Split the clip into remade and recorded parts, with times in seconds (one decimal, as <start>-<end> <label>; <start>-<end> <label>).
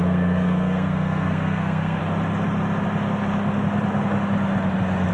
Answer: 0.0-2.0 remade; 2.0-5.1 recorded